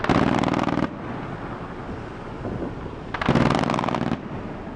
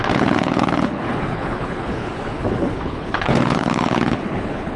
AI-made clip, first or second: second